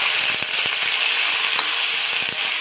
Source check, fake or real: real